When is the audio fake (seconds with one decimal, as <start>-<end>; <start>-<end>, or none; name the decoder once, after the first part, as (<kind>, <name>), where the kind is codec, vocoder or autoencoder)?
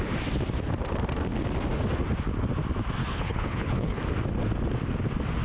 3.0-4.0 (codec, HILCodec)